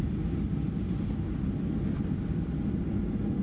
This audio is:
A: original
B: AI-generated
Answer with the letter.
A